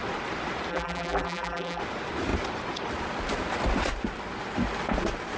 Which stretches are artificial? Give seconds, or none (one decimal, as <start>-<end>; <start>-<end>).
0.7-1.8